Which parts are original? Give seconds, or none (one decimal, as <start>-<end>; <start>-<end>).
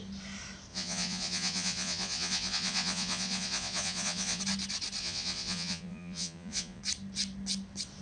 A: 0.0-0.7; 4.4-5.0; 6.8-8.0